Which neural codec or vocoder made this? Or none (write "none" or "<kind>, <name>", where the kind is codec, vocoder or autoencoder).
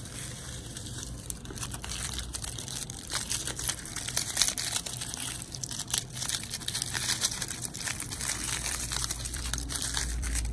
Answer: vocoder, BigVGAN v2